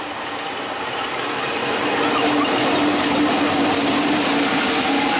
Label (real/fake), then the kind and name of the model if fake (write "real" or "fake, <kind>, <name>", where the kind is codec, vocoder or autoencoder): real